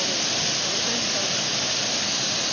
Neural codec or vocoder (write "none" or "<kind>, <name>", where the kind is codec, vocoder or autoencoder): none